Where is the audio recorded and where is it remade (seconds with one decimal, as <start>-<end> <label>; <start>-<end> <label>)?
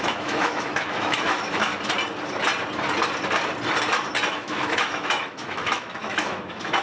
0.0-1.7 remade; 1.7-4.3 recorded; 4.3-6.8 remade